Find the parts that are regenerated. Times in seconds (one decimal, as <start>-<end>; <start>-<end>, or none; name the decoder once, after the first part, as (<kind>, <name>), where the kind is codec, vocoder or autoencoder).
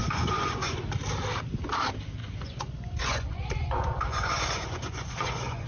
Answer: 0.0-0.8 (vocoder, Vocos); 2.2-5.7